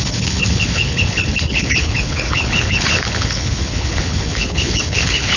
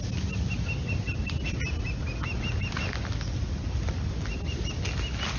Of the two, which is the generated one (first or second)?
first